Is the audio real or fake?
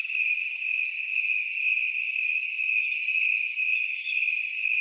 real